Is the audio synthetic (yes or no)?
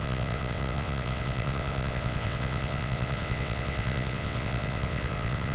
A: yes